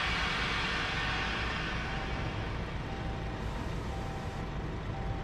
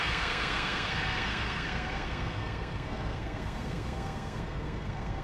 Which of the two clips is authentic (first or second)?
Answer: first